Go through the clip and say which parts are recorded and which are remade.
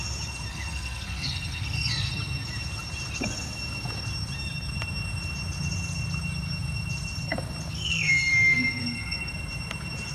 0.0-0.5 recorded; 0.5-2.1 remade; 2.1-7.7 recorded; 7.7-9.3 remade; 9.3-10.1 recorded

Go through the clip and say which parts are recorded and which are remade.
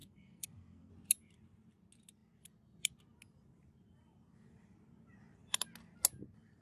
0.0-0.9 remade; 0.9-6.6 recorded